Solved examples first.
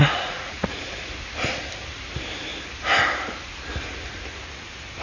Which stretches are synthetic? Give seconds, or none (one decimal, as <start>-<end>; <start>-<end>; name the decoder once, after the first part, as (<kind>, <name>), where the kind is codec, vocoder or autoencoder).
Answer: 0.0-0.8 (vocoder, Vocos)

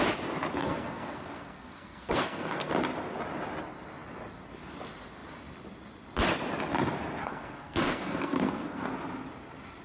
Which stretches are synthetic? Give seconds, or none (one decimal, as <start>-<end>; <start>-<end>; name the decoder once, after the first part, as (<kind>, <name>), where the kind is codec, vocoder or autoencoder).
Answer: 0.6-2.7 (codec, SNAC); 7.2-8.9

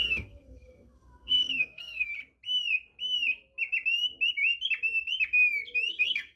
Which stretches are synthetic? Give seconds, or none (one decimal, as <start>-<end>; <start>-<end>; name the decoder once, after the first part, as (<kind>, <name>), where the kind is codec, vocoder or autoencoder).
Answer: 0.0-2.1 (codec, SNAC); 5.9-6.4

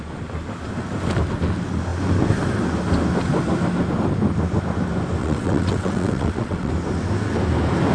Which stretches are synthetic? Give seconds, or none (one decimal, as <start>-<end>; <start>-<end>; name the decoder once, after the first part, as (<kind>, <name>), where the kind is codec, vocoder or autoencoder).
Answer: 5.2-6.7 (vocoder, WaveNeXt)

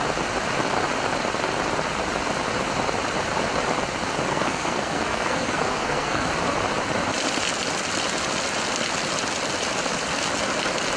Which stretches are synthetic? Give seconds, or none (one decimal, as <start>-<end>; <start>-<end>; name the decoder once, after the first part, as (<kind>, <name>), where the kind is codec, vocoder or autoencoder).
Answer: 4.3-6.3 (codec, SNAC)

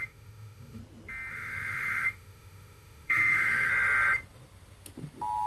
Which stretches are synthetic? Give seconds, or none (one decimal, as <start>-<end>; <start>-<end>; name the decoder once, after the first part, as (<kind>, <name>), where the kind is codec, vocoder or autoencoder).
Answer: 0.0-0.8 (autoencoder, DAC-VAE); 1.3-3.7

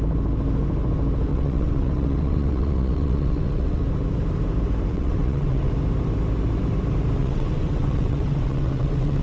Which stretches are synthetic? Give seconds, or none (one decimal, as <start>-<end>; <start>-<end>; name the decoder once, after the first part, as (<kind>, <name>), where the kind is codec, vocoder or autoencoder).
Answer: 1.3-3.8 (vocoder, WaveNeXt); 4.9-5.7; 7.2-9.2

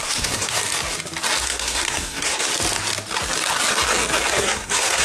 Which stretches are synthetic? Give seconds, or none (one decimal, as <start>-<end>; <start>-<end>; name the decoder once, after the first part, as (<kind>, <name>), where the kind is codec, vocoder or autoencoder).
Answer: 0.0-0.6 (codec, SNAC); 1.4-2.5; 4.3-5.0